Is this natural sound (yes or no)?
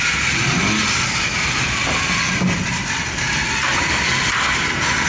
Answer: yes